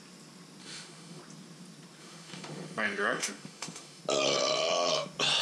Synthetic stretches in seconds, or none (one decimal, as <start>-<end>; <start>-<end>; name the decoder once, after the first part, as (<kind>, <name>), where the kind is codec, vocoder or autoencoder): 0.6-1.2 (autoencoder, DAC-VAE); 2.0-4.0